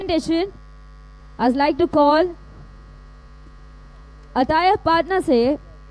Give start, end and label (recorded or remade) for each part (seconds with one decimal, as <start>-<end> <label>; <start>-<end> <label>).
0.0-1.2 recorded; 1.2-4.5 remade; 4.5-5.9 recorded

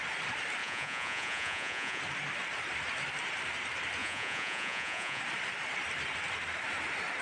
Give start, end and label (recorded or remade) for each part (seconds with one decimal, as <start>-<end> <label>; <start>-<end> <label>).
0.0-0.6 recorded; 0.6-2.0 remade; 2.0-4.0 recorded; 4.0-5.2 remade; 5.2-7.2 recorded

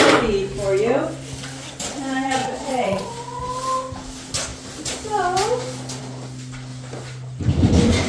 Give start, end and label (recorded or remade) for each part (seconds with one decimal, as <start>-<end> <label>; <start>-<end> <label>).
0.0-2.4 recorded; 2.4-3.1 remade; 3.1-8.1 recorded